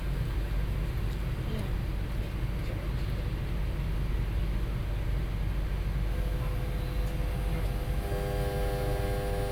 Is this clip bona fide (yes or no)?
yes